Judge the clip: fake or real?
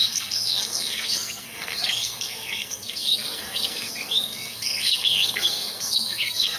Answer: fake